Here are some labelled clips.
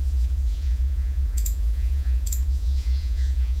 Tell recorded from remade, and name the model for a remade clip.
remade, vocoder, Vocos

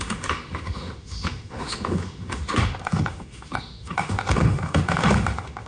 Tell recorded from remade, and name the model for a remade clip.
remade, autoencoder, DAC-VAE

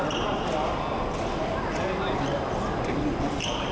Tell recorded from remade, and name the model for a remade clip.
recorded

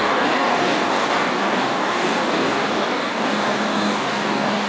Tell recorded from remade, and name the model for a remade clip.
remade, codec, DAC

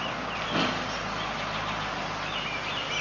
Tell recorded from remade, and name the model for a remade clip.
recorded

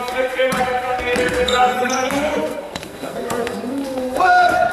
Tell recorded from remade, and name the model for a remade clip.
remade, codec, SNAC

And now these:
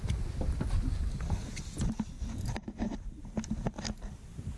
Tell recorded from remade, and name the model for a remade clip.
recorded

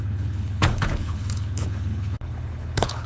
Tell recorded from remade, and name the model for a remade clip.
remade, codec, HILCodec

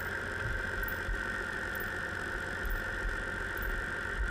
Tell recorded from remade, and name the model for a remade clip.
recorded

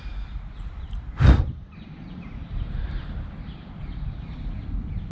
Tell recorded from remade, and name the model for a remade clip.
remade, vocoder, BigVGAN v2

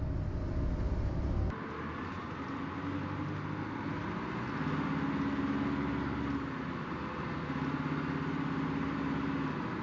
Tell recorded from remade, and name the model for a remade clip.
recorded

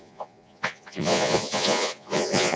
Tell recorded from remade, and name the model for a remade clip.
remade, vocoder, Vocos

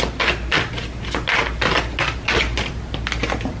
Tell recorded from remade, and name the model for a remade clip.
recorded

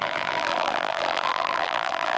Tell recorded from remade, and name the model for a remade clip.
remade, vocoder, BigVGAN v2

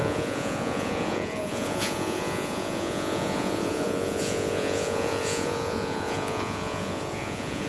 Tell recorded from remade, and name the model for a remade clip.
remade, vocoder, Vocos